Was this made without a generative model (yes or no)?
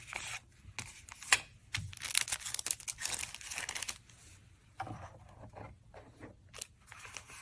yes